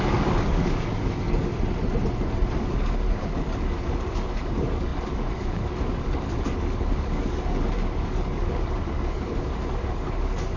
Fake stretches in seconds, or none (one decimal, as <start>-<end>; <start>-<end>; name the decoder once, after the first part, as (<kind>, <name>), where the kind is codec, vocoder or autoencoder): 0.0-1.5 (codec, DAC); 2.6-10.6